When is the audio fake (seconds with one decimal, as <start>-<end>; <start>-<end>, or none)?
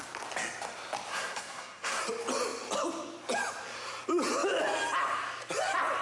1.1-2.0